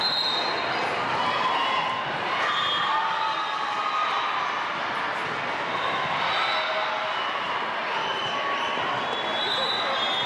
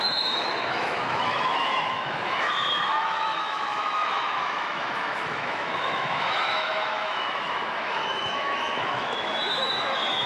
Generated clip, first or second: second